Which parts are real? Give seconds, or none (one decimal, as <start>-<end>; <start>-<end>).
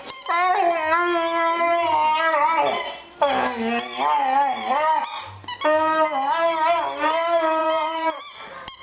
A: 0.0-7.6; 8.2-8.8